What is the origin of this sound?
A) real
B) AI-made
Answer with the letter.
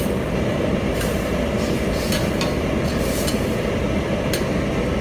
A